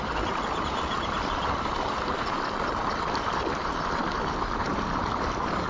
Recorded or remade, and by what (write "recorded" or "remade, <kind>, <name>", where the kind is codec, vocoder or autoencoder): recorded